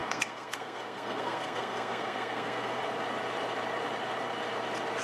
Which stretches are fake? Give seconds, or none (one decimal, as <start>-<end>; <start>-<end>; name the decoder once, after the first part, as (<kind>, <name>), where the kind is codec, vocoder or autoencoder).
0.0-2.8 (codec, SNAC)